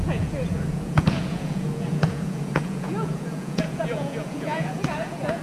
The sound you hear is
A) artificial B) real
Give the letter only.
A